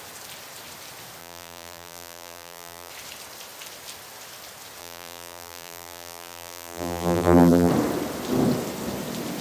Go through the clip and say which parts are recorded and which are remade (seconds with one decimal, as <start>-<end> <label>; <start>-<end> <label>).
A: 0.0-1.2 recorded; 1.2-2.9 remade; 2.9-4.8 recorded; 4.8-7.7 remade; 7.7-9.4 recorded